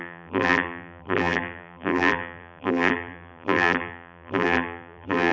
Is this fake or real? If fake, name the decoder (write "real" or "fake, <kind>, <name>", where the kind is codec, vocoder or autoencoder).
fake, vocoder, BigVGAN v2